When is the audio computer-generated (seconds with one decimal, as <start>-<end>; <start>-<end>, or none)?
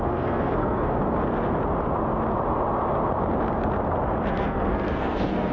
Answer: 0.0-1.0; 4.3-5.5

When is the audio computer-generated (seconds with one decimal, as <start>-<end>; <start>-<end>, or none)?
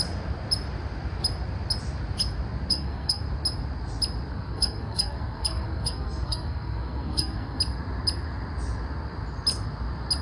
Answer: 2.7-3.2; 4.3-7.6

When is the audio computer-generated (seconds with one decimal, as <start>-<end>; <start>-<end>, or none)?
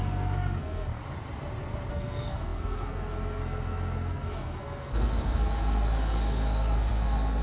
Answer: 0.0-1.0; 1.9-7.4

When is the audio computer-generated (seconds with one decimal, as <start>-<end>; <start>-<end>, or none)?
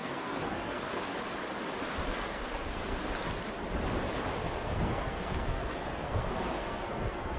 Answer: 0.0-1.1; 2.1-3.0; 4.4-7.4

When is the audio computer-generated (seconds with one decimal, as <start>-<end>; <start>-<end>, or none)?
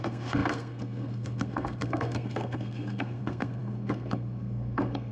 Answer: 0.0-5.1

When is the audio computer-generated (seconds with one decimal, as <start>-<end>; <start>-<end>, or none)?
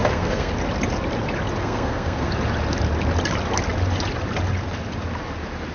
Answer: 0.0-0.5; 1.6-2.3